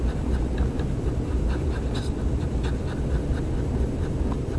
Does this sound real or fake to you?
real